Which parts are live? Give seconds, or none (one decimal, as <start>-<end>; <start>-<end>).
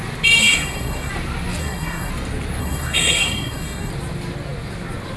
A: 0.0-0.4; 1.1-1.6; 2.1-2.6; 3.9-5.2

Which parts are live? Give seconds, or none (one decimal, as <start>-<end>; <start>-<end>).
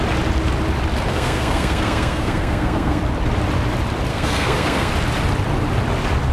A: 0.0-1.1; 3.0-4.1; 4.9-6.3